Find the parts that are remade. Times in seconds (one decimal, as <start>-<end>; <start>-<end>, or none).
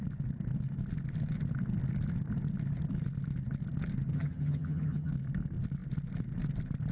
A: 4.1-5.1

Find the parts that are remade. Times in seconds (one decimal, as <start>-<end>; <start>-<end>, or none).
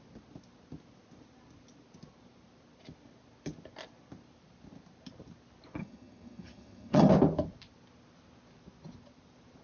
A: 5.8-7.1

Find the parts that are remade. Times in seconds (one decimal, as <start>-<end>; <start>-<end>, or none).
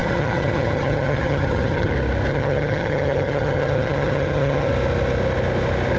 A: 0.0-1.9; 2.3-4.7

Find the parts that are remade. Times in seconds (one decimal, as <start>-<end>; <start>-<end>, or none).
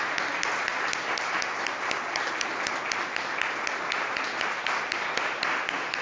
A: none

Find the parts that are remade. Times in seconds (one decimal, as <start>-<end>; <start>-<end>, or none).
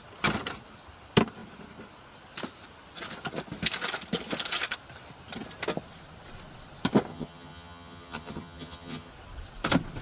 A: 7.1-9.1